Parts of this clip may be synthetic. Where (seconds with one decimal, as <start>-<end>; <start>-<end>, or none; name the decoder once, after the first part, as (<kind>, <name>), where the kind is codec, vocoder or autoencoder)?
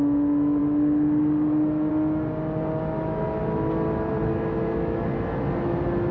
none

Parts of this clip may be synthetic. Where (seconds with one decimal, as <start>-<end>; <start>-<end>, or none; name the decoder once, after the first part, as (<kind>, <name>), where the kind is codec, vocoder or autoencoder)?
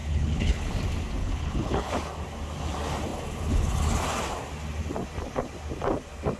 0.0-0.7 (codec, HILCodec); 1.2-1.9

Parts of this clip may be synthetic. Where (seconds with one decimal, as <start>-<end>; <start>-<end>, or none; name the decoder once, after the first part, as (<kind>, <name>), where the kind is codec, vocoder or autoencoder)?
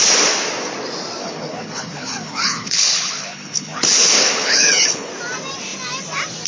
1.2-5.1 (codec, HILCodec)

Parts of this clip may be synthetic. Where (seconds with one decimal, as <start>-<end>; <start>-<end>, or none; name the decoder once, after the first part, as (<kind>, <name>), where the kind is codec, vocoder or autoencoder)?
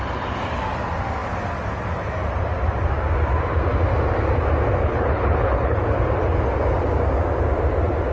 4.8-5.8 (codec, HILCodec)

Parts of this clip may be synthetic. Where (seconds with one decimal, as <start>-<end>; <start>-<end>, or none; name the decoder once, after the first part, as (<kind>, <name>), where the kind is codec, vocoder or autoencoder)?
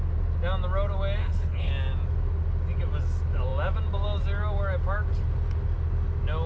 1.2-1.7 (codec, HILCodec)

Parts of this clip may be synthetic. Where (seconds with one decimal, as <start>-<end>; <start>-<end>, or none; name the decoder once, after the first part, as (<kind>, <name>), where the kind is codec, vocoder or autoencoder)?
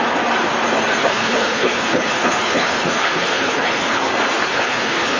1.0-4.0 (codec, HILCodec); 4.4-5.2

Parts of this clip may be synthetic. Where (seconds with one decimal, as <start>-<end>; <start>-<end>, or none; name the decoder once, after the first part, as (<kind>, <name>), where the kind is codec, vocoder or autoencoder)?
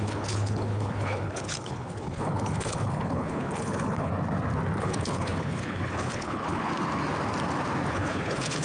0.0-4.1 (codec, HILCodec); 4.8-6.7; 7.9-8.6